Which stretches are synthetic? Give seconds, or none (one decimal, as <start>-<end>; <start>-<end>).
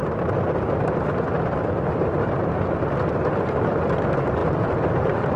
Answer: 0.0-3.1; 4.4-5.4